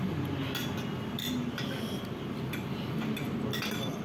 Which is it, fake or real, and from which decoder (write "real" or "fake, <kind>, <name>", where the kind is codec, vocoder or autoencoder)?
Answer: real